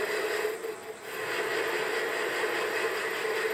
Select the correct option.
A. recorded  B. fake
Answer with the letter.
A